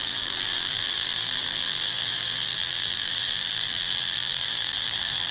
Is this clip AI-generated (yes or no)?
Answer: yes